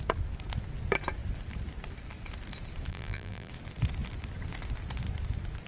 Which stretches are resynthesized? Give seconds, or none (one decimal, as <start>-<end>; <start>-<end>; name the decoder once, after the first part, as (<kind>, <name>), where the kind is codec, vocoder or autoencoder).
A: 2.9-3.5 (vocoder, BigVGAN v2)